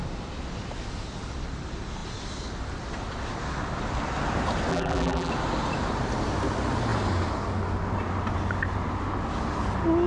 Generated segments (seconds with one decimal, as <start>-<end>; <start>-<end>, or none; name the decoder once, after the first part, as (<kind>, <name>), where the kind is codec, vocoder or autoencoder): 4.7-5.3 (vocoder, BigVGAN v2)